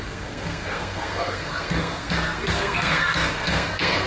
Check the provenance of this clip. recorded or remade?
remade